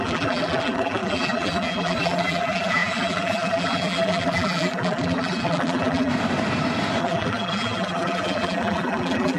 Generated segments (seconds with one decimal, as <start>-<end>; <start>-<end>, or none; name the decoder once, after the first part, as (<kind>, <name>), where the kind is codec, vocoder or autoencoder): 0.0-6.1 (vocoder, BigVGAN v2); 7.0-9.4